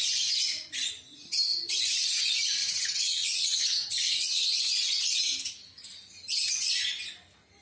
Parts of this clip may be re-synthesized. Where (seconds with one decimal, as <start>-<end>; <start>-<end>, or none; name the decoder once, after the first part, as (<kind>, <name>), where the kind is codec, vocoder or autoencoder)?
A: 2.6-4.6 (vocoder, WaveNeXt)